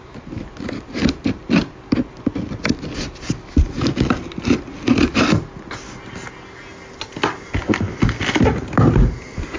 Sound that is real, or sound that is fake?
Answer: real